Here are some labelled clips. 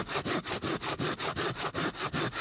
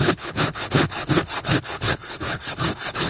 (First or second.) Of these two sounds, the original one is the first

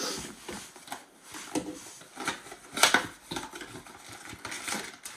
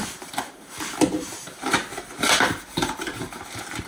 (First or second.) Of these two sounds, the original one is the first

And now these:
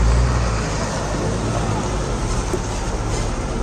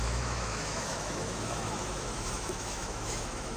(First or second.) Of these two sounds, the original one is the first